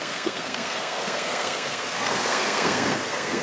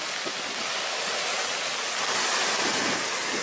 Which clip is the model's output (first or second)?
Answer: first